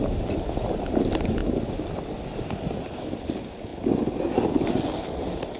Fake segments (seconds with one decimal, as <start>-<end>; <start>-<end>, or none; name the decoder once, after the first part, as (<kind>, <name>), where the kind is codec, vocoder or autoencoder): 1.4-3.2 (vocoder, BigVGAN v2)